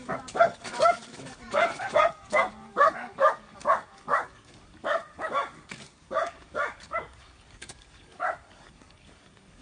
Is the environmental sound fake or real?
fake